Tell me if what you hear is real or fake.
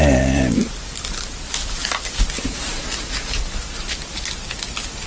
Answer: real